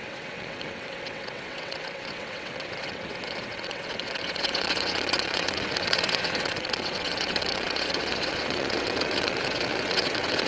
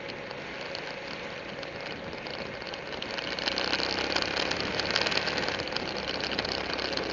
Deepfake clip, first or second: first